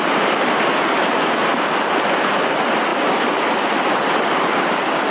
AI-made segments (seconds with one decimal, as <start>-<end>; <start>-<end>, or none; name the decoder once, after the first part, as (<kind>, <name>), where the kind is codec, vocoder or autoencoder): none